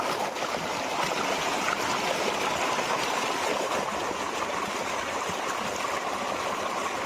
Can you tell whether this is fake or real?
real